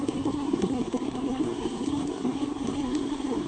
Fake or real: fake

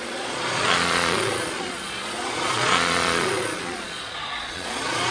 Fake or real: fake